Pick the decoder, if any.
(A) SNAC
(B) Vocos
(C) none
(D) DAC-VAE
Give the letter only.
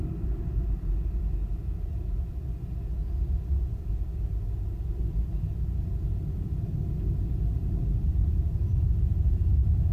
C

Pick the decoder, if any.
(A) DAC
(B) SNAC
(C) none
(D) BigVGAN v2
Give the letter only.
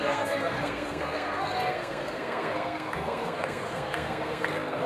B